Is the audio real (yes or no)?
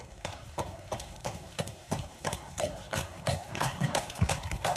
no